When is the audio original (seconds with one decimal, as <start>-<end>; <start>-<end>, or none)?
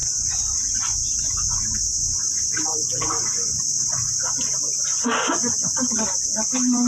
4.1-6.9